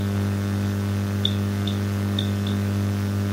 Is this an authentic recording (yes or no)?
no